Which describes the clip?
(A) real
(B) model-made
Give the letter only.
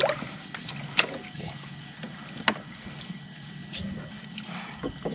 A